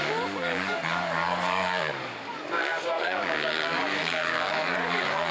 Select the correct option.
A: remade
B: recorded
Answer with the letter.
A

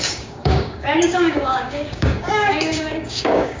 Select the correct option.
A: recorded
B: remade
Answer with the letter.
B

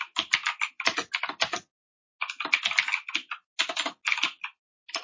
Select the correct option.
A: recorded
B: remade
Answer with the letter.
A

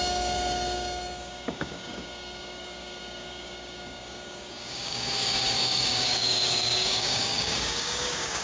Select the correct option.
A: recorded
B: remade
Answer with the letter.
B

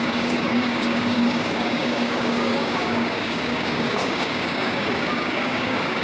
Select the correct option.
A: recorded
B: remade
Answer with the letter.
B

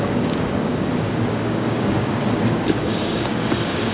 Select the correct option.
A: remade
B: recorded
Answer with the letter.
A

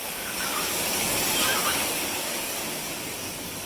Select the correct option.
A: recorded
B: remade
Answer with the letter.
B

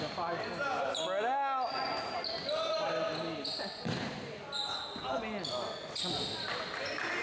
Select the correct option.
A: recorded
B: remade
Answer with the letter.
A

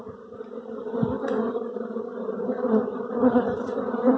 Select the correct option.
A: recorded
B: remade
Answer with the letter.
A